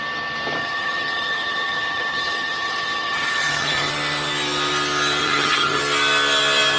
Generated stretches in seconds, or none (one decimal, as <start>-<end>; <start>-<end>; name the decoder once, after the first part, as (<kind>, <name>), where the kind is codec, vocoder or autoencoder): 0.6-3.9 (vocoder, HiFi-GAN); 5.2-5.8

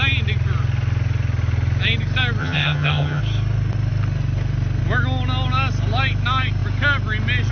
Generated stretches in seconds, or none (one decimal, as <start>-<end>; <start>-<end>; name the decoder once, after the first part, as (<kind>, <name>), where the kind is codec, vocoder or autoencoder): 2.4-3.2 (vocoder, HiFi-GAN)

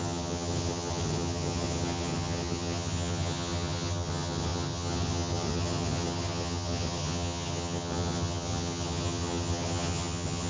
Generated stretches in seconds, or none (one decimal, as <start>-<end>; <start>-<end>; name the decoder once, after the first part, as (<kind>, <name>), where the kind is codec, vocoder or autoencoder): 0.0-10.5 (vocoder, HiFi-GAN)

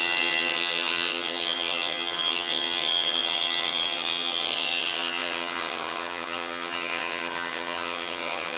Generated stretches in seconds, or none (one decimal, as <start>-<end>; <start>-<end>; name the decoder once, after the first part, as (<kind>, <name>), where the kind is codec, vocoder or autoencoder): 0.0-8.6 (vocoder, HiFi-GAN)

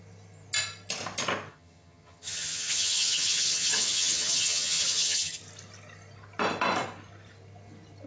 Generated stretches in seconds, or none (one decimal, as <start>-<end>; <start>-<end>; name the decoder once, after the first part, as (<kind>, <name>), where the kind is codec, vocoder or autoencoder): 1.5-5.4 (vocoder, HiFi-GAN)

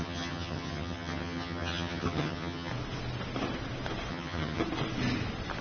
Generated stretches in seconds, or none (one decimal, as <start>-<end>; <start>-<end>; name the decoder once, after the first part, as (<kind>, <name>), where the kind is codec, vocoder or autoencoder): 0.0-2.7 (vocoder, HiFi-GAN); 4.1-4.6

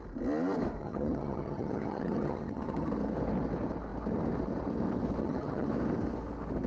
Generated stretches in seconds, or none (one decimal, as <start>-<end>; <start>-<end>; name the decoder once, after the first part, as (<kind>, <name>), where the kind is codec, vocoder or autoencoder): 0.8-2.9 (vocoder, HiFi-GAN); 5.2-5.7

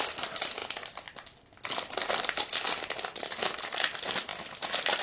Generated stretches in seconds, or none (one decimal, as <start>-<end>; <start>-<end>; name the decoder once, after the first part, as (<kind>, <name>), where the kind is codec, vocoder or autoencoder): none